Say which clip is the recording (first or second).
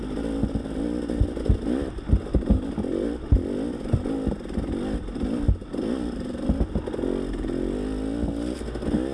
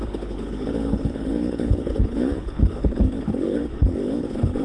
first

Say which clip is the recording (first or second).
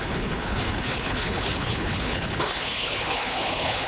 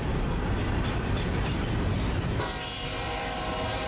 second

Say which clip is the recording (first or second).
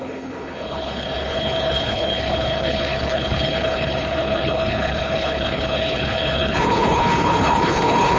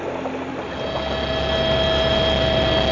second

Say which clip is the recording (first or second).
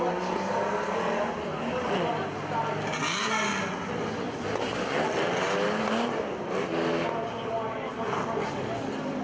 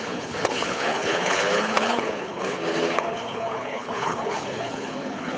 first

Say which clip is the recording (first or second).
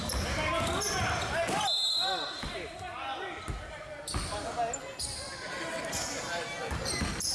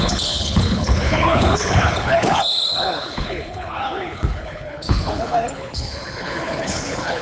first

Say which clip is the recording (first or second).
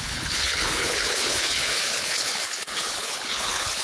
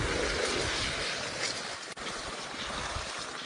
second